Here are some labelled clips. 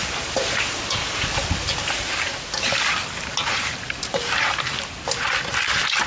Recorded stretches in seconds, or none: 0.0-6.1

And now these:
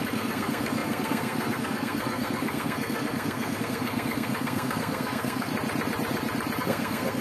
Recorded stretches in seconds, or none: 5.5-6.6

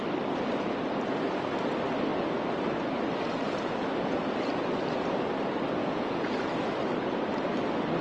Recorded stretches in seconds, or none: 0.0-5.8; 6.4-8.0

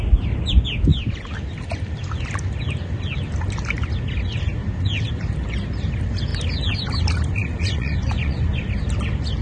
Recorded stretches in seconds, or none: 0.0-7.4; 8.6-9.4

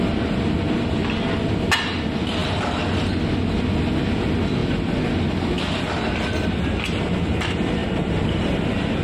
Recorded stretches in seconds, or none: 0.0-9.0

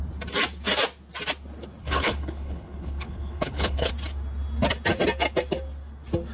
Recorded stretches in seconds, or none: 0.0-1.8; 3.9-6.3

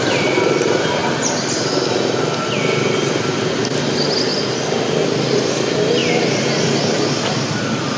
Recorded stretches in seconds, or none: 0.0-8.0

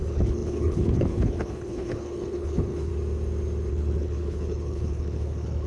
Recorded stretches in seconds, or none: 2.9-3.7